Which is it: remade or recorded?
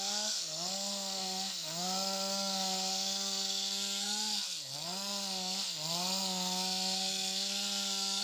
remade